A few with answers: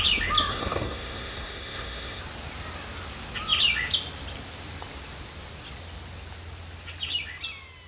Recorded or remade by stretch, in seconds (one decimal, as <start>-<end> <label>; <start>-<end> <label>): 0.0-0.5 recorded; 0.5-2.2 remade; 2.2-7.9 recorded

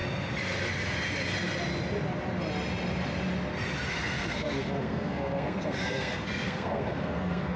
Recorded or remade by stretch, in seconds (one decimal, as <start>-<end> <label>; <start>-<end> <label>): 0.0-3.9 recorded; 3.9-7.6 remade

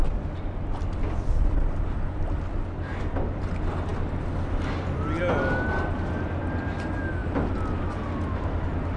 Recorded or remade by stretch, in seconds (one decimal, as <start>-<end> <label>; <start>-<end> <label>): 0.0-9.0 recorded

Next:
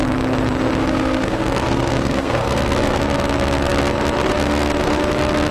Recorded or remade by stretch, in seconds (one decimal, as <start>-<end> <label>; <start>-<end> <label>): 0.0-0.8 recorded; 0.8-3.0 remade; 3.0-5.5 recorded

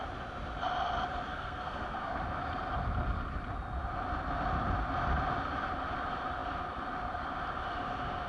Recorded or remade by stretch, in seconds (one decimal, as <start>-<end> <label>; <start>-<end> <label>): 0.0-1.3 recorded; 1.3-2.2 remade; 2.2-8.3 recorded

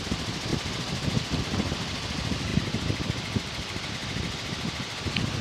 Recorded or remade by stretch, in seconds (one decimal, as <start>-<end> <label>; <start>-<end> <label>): 0.0-5.4 recorded

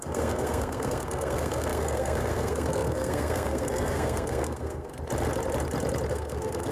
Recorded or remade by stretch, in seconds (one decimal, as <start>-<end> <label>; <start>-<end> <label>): 0.0-4.9 remade; 4.9-6.1 recorded; 6.1-6.7 remade

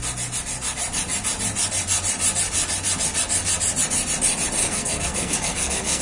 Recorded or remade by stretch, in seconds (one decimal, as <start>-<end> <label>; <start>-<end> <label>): 0.0-4.6 recorded; 4.6-6.0 remade